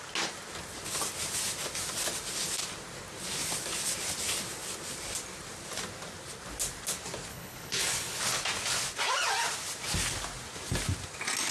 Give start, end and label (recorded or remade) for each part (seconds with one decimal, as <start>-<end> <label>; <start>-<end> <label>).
0.0-7.3 recorded; 7.3-8.2 remade; 8.2-11.5 recorded